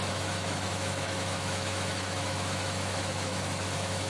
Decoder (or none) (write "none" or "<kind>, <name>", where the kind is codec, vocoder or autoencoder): autoencoder, DAC-VAE